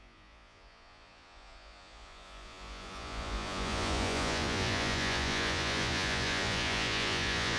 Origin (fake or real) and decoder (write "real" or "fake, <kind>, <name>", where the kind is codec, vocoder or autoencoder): fake, vocoder, Vocos